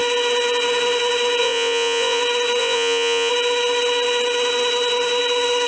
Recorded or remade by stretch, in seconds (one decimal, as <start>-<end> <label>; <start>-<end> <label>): 0.0-1.4 recorded; 1.4-2.2 remade; 2.2-2.6 recorded; 2.6-3.3 remade; 3.3-5.7 recorded